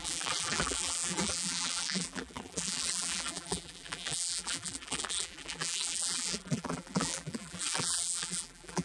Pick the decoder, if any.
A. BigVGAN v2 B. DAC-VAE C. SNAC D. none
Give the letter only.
A